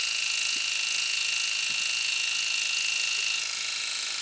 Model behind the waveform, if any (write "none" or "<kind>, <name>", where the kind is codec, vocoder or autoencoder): vocoder, Vocos